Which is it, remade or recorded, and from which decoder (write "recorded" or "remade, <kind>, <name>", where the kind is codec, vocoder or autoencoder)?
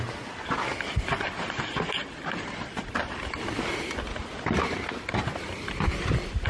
recorded